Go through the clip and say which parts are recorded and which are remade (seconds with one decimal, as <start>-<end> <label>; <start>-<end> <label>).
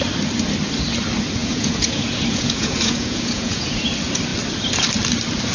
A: 0.0-1.4 recorded; 1.4-3.8 remade; 3.8-5.5 recorded